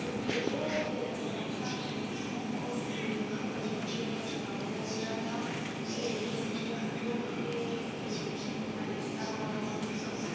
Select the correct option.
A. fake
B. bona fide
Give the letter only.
B